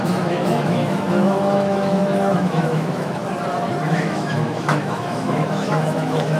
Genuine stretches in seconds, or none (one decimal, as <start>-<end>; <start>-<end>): 3.2-3.8